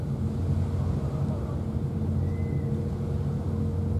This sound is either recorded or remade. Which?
recorded